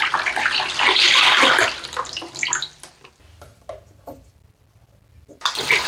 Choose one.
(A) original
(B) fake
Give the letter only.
A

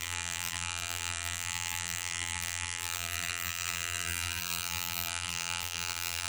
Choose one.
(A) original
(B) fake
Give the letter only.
B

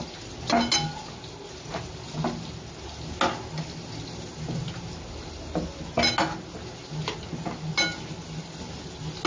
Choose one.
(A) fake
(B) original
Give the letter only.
B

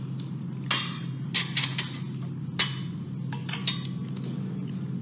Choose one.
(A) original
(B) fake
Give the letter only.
A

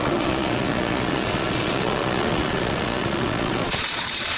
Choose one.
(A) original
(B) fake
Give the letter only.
B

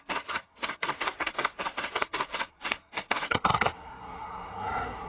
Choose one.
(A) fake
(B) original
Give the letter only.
A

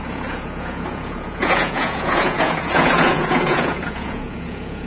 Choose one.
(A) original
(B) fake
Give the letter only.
B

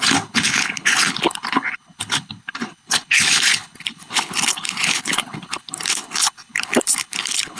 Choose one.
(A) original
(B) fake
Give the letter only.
B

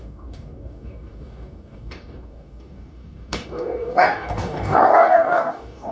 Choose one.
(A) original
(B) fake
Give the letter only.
B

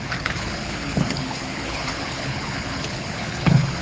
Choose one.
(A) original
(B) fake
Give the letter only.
B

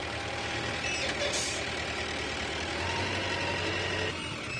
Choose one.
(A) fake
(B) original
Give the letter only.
B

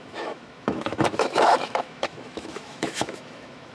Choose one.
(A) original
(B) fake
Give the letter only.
B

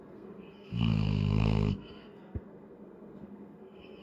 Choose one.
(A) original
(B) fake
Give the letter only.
B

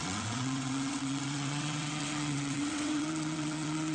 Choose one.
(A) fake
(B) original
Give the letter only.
A